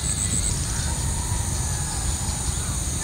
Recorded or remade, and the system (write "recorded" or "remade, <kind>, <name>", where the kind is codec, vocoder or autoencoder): recorded